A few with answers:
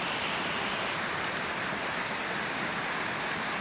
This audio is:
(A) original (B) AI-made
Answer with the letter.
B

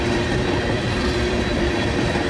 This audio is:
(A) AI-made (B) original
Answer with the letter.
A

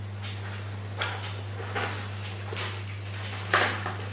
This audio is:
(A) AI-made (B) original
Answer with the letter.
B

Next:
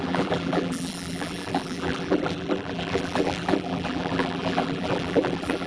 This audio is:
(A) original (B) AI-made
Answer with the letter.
B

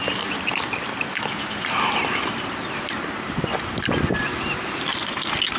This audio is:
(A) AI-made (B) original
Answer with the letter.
A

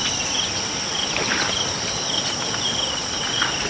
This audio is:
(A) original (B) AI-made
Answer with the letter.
A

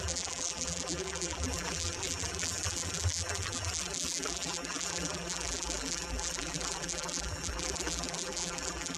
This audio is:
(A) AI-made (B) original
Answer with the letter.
A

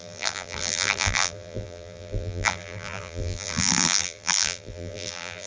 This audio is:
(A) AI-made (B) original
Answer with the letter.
A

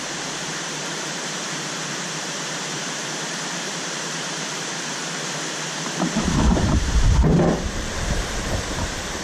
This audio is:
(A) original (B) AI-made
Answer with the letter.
B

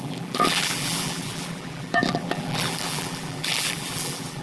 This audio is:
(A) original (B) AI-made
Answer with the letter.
B